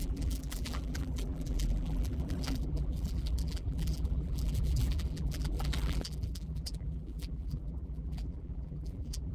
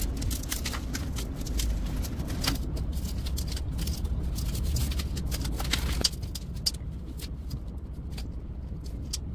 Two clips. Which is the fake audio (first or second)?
first